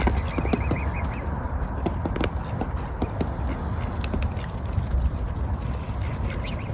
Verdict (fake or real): real